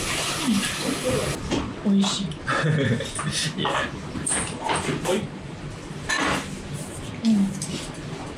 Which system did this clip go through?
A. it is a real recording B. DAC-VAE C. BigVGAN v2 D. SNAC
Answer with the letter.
A